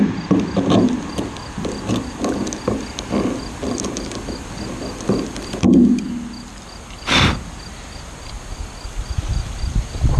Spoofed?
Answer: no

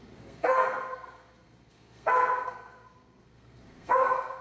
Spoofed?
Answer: yes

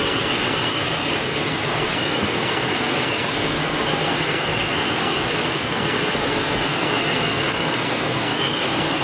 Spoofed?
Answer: yes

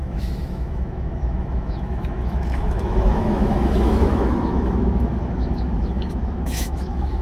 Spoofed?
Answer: yes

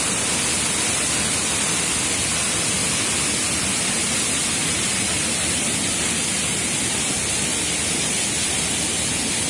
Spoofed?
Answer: no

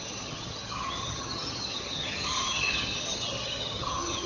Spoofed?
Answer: yes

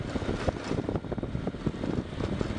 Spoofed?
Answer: no